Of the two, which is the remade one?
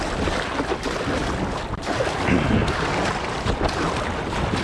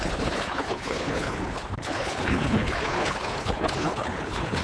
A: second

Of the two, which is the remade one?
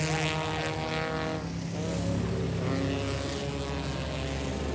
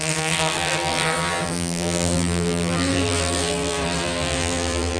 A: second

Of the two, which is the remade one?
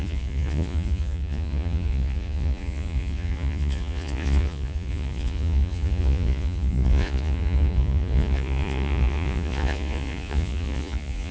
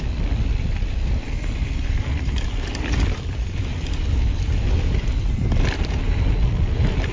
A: first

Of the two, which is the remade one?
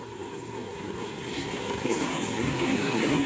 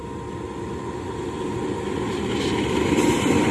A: first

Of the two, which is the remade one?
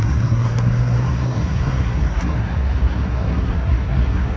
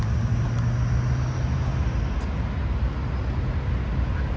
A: first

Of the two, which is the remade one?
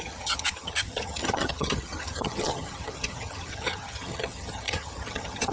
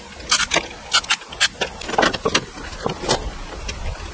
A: first